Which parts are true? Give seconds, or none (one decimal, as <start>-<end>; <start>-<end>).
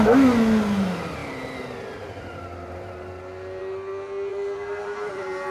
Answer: 0.0-4.3; 5.1-5.5